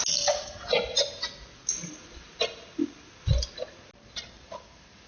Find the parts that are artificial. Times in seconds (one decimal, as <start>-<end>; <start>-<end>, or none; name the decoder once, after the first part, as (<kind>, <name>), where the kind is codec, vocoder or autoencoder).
none